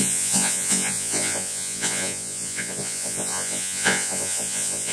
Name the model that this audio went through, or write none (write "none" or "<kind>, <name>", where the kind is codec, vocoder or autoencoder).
vocoder, Vocos